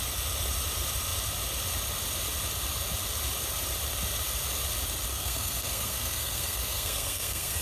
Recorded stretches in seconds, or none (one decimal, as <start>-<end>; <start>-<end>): 0.0-5.1